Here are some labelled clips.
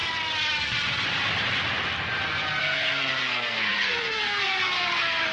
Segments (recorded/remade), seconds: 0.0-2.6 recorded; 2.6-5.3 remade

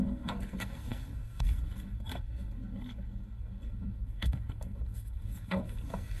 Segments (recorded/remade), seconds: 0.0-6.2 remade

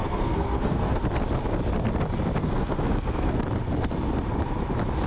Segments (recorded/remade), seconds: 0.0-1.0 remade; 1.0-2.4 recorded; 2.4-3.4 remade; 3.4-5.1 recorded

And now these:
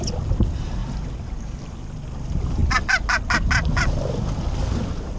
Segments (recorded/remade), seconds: 0.0-0.8 recorded; 0.8-1.6 remade; 1.6-5.2 recorded

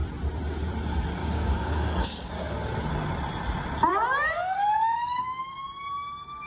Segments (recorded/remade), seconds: 0.0-1.2 recorded; 1.2-2.3 remade; 2.3-3.9 recorded; 3.9-5.5 remade; 5.5-6.5 recorded

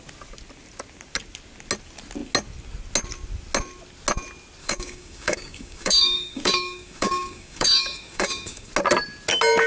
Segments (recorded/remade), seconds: 0.0-4.6 recorded; 4.6-8.7 remade; 8.7-9.7 recorded